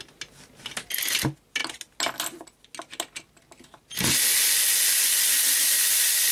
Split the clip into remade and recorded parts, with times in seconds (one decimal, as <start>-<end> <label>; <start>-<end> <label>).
0.0-6.3 recorded